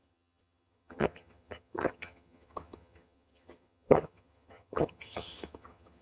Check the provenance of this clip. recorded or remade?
remade